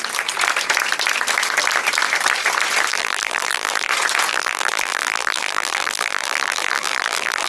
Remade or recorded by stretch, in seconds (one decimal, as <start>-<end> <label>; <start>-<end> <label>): 0.0-2.9 recorded; 2.9-3.9 remade; 3.9-4.3 recorded; 4.3-7.5 remade